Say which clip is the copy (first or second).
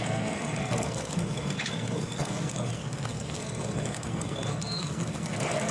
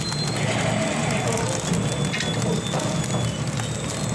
first